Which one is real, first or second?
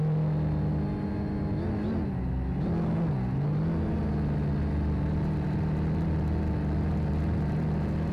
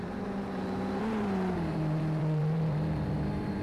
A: first